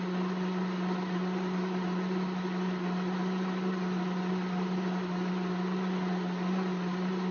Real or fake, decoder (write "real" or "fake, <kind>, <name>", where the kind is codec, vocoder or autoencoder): real